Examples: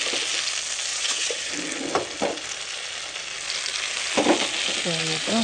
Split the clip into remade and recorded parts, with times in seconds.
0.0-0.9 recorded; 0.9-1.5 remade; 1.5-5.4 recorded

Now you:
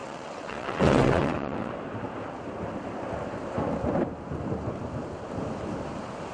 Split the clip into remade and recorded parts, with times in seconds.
0.0-1.7 remade; 1.7-6.3 recorded

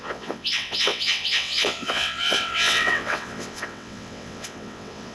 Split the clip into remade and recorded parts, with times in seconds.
0.0-5.1 remade